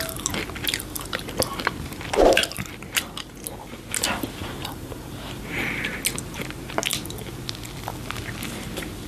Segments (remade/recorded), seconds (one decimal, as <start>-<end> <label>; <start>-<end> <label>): 0.0-4.4 recorded; 4.4-5.4 remade; 5.4-9.1 recorded